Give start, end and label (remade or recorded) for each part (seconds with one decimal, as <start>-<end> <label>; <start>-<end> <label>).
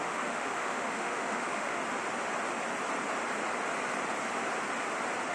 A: 0.0-1.8 remade; 1.8-5.3 recorded